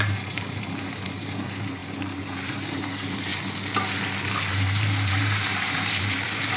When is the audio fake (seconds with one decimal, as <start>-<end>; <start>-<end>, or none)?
0.0-3.3; 4.5-6.6